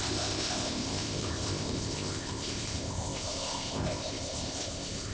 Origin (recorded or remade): remade